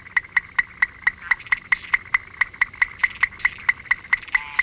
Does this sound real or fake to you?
fake